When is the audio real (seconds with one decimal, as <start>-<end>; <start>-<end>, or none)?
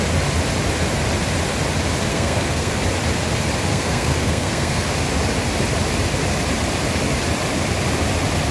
0.0-2.1; 2.8-3.7; 4.9-8.5